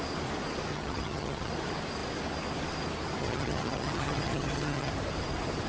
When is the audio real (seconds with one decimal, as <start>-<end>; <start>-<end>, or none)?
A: 0.0-0.7; 1.5-3.2; 4.9-5.7